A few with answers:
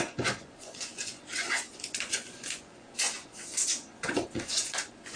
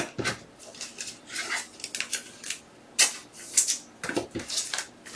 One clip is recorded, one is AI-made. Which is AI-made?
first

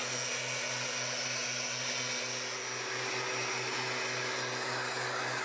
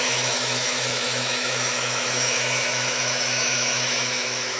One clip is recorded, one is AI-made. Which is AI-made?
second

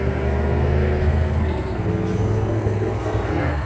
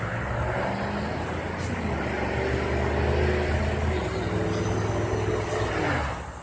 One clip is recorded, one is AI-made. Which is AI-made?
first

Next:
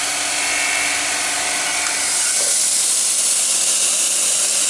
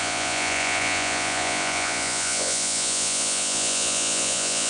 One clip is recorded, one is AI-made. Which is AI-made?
second